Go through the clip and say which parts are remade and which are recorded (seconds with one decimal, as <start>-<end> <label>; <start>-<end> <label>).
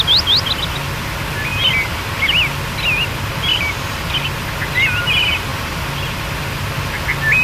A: 0.0-3.5 recorded; 3.5-4.0 remade; 4.0-7.4 recorded